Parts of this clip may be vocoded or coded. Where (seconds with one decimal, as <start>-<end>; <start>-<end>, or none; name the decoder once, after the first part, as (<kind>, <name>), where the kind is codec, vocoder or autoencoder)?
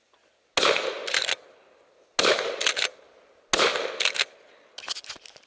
none